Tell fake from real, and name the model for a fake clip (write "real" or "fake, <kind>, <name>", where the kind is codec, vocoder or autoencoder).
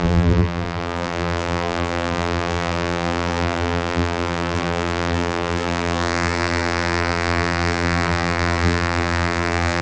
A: fake, vocoder, BigVGAN v2